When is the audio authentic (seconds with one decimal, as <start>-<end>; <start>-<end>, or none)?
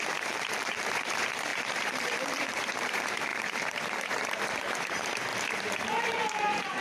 5.3-6.0